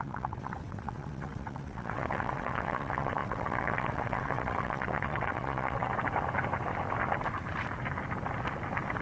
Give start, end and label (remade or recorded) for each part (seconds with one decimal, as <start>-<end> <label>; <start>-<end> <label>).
0.0-5.9 remade; 5.9-9.0 recorded